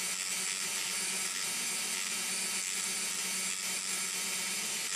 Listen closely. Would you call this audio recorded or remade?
recorded